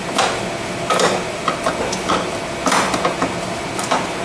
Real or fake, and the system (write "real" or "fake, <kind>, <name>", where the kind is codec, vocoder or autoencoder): real